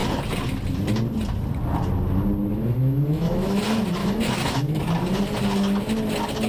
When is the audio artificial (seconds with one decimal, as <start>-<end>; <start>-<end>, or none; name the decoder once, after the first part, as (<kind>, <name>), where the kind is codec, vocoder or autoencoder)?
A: 2.5-3.6 (autoencoder, DAC-VAE); 4.0-4.8